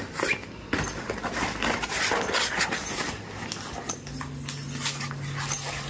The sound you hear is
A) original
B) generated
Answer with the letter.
A